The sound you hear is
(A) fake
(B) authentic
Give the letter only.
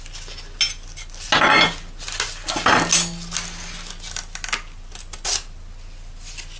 B